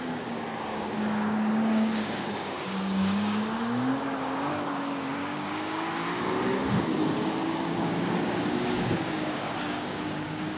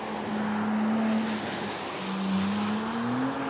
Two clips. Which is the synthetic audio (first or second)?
first